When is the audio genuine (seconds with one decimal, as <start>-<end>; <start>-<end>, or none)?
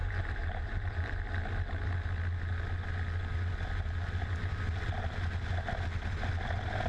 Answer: 1.1-6.9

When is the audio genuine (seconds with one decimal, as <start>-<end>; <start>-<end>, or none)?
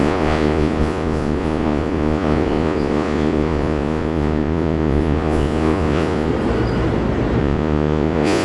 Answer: 6.3-7.4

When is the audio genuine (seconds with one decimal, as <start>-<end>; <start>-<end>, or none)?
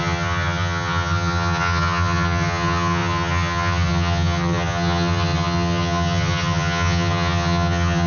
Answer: none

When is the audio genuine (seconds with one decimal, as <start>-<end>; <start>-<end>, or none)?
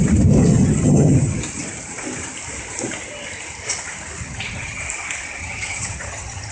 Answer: 0.0-0.4; 1.4-4.2; 4.8-5.4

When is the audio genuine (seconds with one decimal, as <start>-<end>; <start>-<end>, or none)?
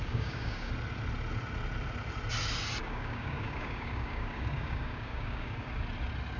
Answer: 0.7-2.8; 5.7-6.4